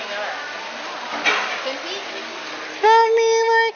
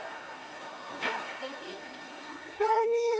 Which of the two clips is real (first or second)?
first